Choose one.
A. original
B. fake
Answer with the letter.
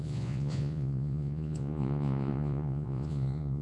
B